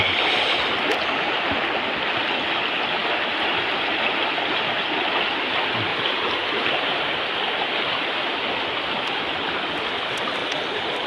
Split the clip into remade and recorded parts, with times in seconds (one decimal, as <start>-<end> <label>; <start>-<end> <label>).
0.0-5.9 recorded; 5.9-7.0 remade; 7.0-10.4 recorded; 10.4-11.1 remade